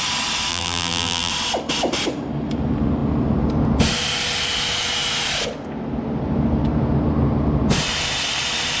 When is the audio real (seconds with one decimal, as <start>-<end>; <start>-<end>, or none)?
0.0-0.5; 1.3-8.8

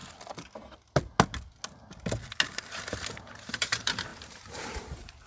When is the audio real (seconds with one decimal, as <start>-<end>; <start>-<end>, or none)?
0.0-2.5

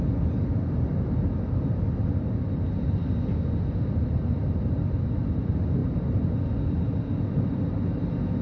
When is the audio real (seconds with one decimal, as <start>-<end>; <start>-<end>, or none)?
0.0-8.4

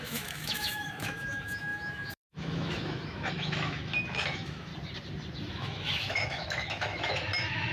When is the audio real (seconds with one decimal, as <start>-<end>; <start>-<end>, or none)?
4.7-5.5

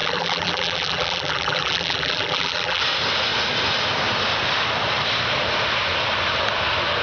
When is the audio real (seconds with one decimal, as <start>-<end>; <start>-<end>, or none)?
2.8-7.0